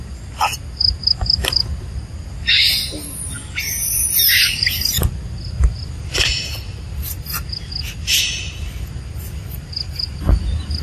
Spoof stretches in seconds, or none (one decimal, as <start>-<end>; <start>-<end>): 3.8-4.4